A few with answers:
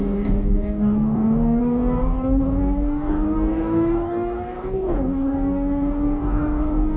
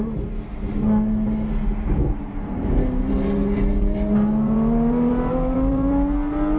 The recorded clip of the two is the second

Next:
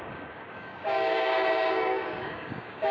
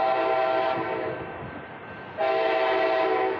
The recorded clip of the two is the second